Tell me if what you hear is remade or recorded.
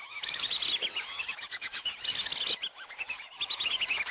remade